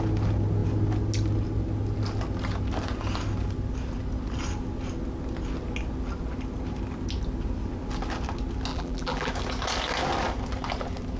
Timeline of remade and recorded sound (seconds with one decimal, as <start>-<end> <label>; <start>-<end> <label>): 0.0-8.7 recorded; 8.7-9.3 remade; 9.3-11.2 recorded